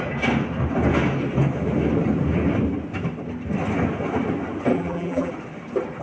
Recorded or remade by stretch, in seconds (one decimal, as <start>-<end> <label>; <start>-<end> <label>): 0.0-4.7 recorded; 4.7-5.3 remade; 5.3-6.0 recorded